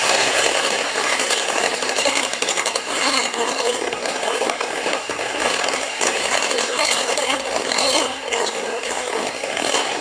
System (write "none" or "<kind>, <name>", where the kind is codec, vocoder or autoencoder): codec, SNAC